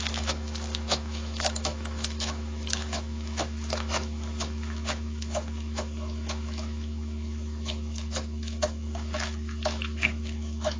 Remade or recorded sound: remade